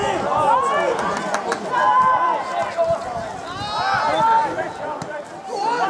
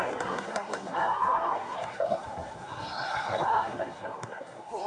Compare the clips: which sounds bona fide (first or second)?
first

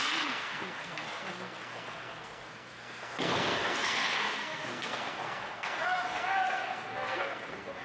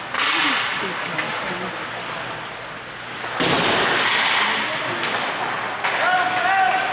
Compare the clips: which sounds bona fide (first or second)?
second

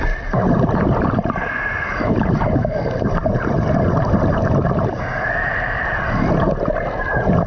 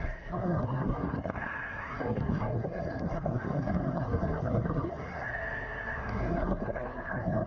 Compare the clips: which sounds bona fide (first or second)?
first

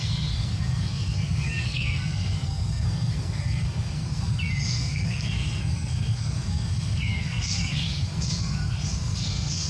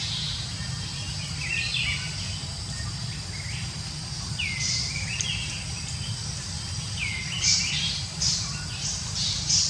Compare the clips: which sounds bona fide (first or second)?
second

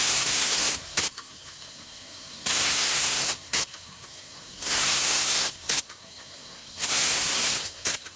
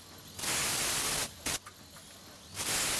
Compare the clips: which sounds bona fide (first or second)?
second